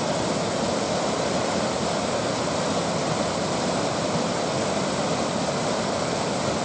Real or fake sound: real